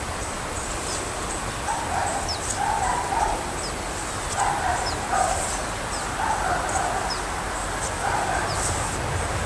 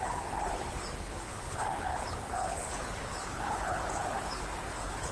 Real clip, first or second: first